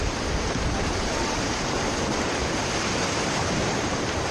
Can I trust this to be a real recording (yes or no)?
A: no